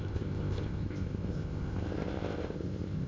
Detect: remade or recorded remade